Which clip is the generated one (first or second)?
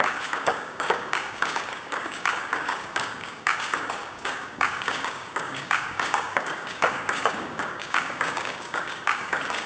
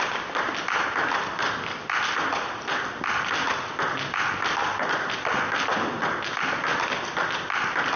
first